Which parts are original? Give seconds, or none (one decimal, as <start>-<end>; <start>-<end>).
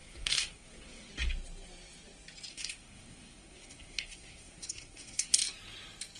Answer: 1.1-2.5; 5.4-6.2